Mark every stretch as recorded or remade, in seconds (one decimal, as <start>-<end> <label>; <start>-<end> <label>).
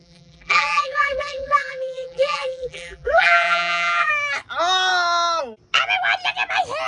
0.0-4.1 remade; 4.1-6.9 recorded